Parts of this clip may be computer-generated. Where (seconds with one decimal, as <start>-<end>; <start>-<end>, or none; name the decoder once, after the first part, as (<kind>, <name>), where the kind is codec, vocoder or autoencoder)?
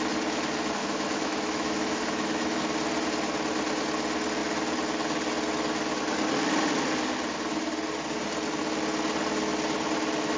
0.8-2.6 (autoencoder, DAC-VAE)